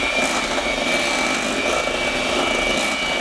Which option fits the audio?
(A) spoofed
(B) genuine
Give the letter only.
B